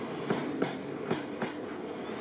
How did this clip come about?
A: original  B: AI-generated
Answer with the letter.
A